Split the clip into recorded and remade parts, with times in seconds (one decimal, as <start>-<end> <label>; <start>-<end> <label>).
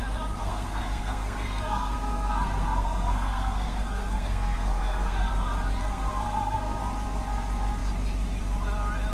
0.0-0.4 recorded; 0.4-5.3 remade; 5.3-5.8 recorded; 5.8-6.8 remade; 6.8-9.1 recorded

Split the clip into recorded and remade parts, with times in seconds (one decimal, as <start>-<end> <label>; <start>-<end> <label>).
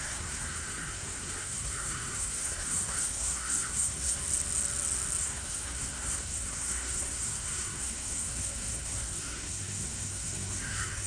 0.0-4.2 remade; 4.2-5.2 recorded; 5.2-11.1 remade